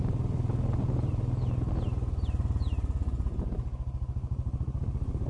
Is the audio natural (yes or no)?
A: yes